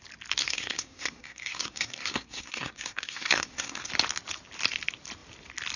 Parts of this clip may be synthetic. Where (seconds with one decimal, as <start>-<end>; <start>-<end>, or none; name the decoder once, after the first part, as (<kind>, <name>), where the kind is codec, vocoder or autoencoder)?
0.4-3.9 (codec, SNAC)

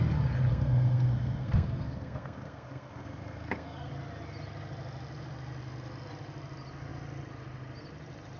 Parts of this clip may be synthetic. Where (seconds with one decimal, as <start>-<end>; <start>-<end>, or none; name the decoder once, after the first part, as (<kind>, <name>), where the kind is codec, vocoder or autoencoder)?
0.5-3.9 (codec, SNAC)

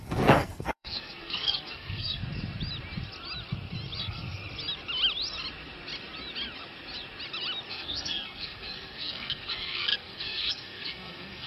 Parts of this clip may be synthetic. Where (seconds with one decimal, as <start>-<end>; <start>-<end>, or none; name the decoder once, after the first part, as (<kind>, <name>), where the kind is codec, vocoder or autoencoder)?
0.0-2.2 (codec, SNAC); 4.0-4.4; 7.7-11.5

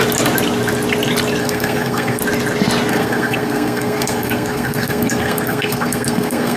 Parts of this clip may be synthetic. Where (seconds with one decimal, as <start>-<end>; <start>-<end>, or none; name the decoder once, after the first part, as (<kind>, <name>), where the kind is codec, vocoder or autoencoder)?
1.4-2.2 (codec, SNAC); 2.9-6.6

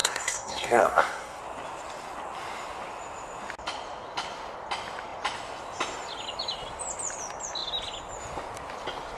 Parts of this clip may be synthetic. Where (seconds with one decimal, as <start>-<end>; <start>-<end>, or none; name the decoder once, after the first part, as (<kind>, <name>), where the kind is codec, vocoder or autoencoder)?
0.0-1.4 (codec, SNAC)

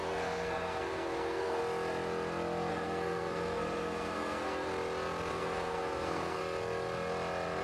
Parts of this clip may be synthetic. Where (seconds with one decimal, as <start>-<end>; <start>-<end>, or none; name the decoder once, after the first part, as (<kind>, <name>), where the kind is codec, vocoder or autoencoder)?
0.0-1.6 (codec, SNAC); 2.7-4.7; 5.3-6.4